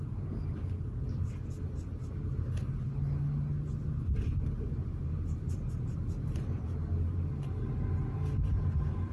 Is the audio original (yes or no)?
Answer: yes